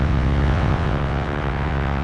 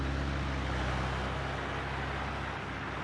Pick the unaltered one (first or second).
second